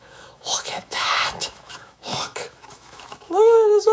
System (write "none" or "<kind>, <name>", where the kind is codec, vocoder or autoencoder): autoencoder, DAC-VAE